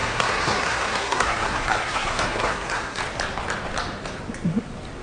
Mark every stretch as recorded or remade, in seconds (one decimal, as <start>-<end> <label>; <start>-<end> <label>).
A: 0.0-3.0 remade; 3.0-5.0 recorded